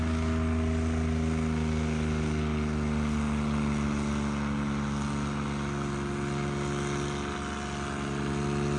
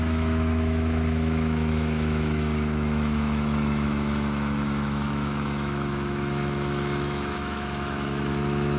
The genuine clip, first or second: first